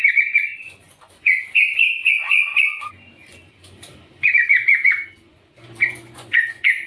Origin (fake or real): fake